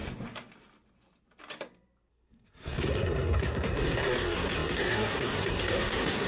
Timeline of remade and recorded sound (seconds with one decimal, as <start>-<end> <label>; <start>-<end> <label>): 0.0-2.1 recorded; 2.1-6.3 remade